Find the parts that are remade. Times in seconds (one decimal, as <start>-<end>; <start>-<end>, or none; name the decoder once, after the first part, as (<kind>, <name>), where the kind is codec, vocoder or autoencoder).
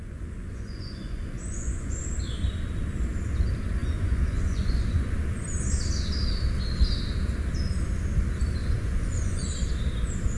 0.0-2.0 (vocoder, Vocos); 3.8-5.1; 8.6-9.5